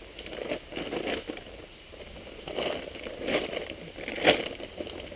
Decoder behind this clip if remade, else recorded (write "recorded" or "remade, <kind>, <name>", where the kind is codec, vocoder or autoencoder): recorded